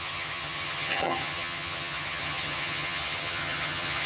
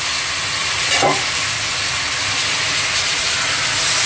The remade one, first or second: first